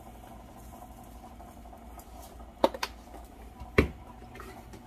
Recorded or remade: recorded